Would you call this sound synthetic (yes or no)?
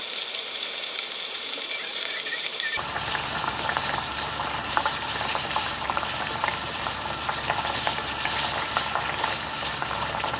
yes